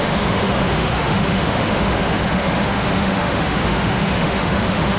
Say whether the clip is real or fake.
fake